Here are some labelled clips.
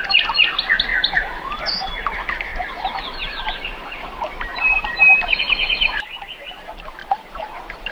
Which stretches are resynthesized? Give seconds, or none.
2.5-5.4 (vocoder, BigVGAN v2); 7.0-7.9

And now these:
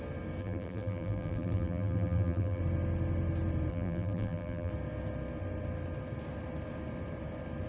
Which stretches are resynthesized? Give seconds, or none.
0.4-2.6 (vocoder, BigVGAN v2); 3.7-4.7

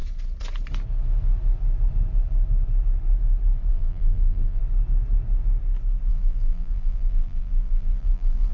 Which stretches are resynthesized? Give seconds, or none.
3.7-4.6 (vocoder, BigVGAN v2); 6.1-8.5